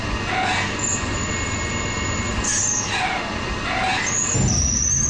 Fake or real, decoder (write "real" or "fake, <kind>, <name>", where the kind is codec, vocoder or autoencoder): real